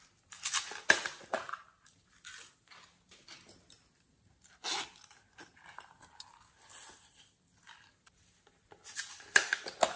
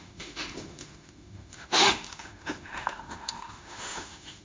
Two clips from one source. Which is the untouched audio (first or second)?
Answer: first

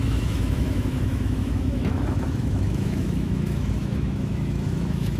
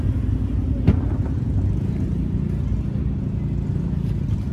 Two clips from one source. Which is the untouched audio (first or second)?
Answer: second